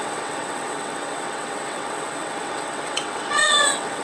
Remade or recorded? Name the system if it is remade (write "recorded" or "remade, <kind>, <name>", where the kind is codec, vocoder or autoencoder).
remade, vocoder, WaveNeXt